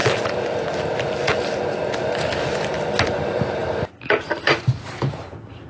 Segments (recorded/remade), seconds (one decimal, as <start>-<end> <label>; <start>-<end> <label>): 0.0-5.7 recorded